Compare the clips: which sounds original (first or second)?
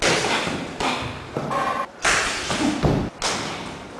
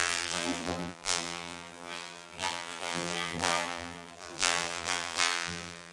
first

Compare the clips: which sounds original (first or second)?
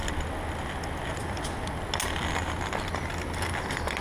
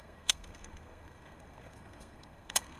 first